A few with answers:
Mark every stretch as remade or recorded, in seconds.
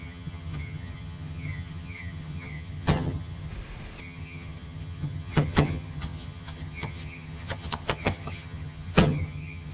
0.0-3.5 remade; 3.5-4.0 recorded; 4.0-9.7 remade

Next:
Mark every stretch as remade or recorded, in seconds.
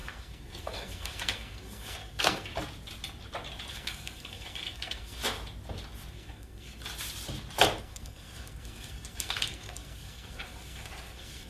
0.0-2.5 remade; 2.5-3.7 recorded; 3.7-5.2 remade; 5.2-6.1 recorded; 6.1-6.8 remade; 6.8-7.8 recorded; 7.8-11.5 remade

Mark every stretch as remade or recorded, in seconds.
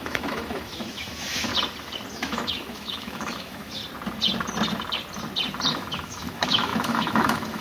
0.0-1.5 remade; 1.5-2.1 recorded; 2.1-3.8 remade; 3.8-5.7 recorded; 5.7-7.6 remade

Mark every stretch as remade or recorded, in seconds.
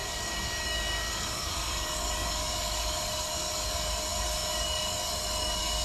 0.0-5.8 remade